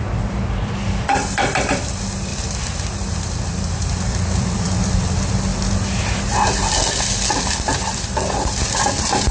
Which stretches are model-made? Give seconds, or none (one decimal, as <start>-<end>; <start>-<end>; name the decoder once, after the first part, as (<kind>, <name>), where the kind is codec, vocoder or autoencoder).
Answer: 0.0-2.3 (vocoder, BigVGAN v2); 4.4-5.5; 7.4-9.3